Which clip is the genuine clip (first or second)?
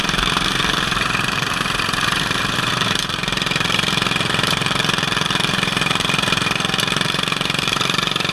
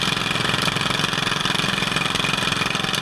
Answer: second